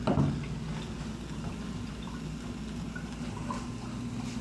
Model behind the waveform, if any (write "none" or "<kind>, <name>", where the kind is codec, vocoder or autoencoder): none